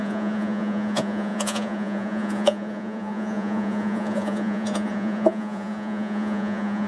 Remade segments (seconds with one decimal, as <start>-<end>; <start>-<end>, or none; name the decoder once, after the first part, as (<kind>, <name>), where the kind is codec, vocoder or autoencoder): 0.0-6.9 (vocoder, Vocos)